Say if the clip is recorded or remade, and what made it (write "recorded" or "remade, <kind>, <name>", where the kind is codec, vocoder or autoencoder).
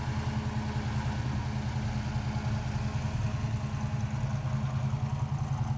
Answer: recorded